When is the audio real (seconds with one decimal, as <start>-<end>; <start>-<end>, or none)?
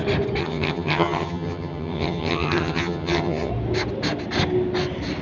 0.0-0.4; 3.5-5.2